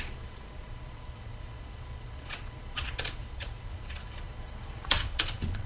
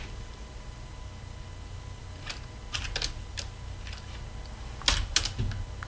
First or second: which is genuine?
second